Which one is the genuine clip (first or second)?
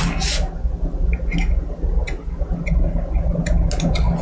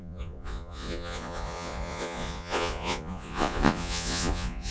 first